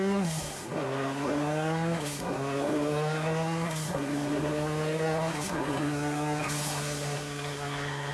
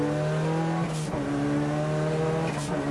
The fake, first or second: first